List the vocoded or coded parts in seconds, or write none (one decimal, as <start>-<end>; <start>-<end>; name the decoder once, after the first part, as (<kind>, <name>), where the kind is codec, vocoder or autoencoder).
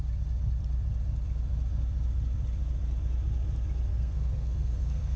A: 3.9-5.2 (codec, SNAC)